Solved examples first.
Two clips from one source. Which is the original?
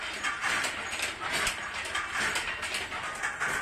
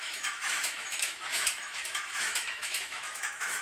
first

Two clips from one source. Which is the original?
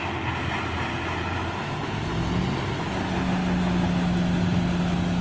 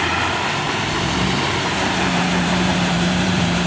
first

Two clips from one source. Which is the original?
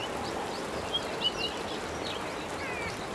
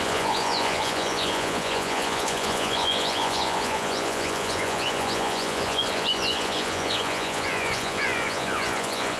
first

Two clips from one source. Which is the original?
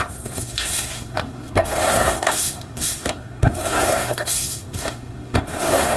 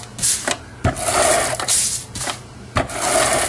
second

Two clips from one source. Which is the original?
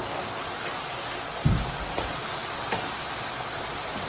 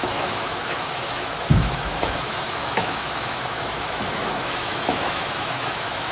first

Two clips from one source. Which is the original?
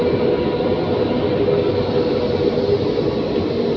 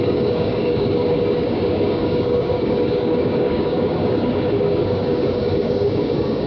first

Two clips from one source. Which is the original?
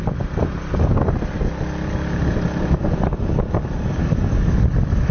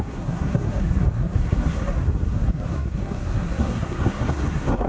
first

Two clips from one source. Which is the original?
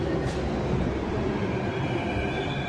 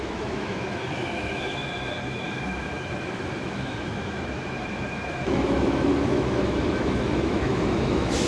first